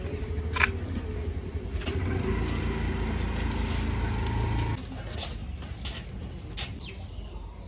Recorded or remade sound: recorded